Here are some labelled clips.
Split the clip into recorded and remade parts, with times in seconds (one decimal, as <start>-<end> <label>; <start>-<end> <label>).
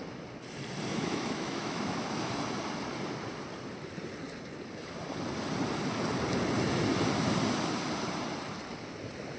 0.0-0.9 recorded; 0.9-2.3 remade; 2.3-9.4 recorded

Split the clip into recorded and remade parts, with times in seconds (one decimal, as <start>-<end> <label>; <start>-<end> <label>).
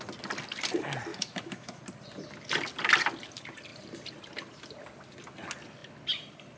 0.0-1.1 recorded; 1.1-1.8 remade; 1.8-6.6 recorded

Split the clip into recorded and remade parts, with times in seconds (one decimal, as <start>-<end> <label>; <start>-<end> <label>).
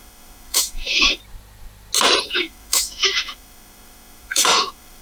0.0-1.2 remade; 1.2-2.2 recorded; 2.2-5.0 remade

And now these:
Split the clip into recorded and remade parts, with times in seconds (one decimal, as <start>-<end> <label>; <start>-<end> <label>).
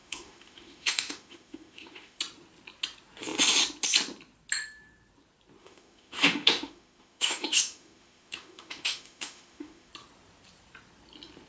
0.0-2.2 remade; 2.2-5.6 recorded; 5.6-9.9 remade; 9.9-11.5 recorded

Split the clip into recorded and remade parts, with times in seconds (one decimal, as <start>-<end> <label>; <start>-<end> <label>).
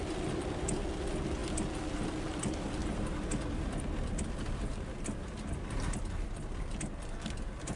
0.0-7.8 recorded